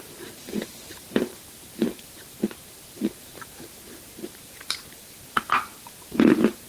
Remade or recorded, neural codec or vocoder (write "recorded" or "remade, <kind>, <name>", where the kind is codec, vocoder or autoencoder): remade, vocoder, BigVGAN v2